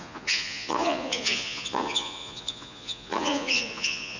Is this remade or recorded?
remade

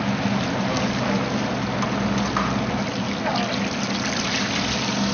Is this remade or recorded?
recorded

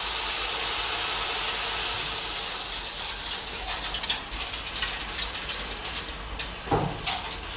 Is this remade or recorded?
recorded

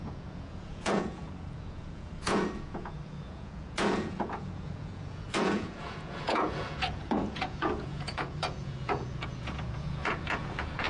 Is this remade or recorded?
remade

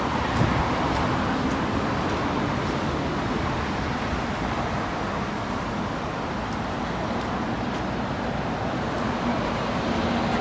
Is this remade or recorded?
recorded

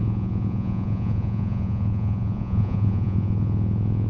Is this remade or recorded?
remade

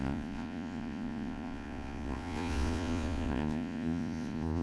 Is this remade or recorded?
remade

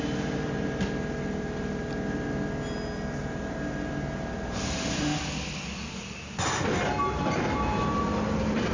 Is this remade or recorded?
recorded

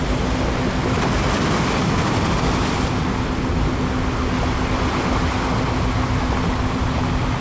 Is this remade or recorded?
recorded